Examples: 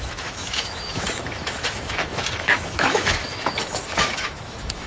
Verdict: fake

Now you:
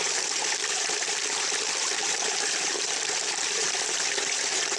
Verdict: fake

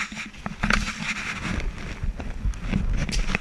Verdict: real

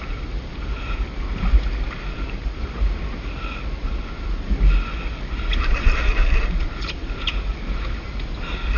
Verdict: real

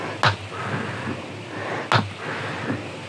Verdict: real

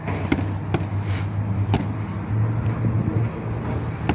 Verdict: real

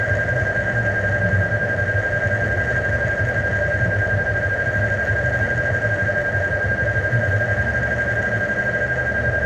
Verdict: real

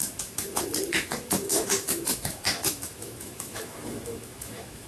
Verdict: fake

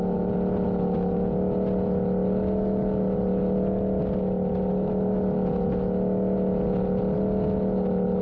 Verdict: real